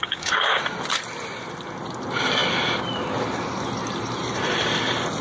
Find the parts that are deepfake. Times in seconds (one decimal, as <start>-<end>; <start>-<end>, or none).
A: 0.0-0.6